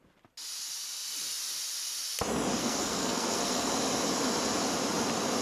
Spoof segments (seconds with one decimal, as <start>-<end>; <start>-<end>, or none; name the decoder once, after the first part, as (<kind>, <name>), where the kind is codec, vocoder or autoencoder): 2.6-3.7 (codec, SNAC)